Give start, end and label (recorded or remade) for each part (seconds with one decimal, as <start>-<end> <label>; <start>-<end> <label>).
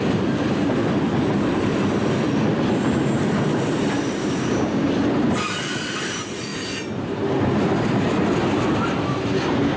0.0-4.2 recorded; 4.2-4.9 remade; 4.9-9.8 recorded